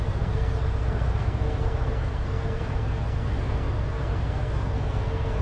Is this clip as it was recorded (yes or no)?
no